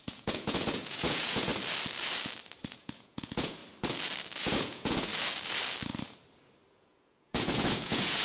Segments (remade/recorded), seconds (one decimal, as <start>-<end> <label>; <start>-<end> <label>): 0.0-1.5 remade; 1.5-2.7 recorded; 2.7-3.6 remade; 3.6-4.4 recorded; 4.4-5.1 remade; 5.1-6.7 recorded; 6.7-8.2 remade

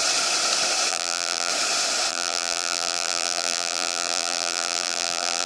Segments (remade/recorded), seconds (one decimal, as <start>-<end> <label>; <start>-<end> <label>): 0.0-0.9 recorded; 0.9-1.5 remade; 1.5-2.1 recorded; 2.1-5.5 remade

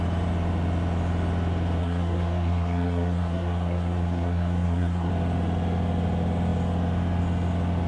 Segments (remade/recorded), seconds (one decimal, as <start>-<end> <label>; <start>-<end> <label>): 0.0-1.8 recorded; 1.8-5.1 remade; 5.1-7.9 recorded

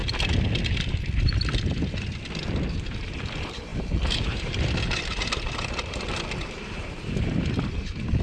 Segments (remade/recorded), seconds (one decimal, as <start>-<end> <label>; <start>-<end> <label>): 0.0-2.7 recorded; 2.7-8.2 remade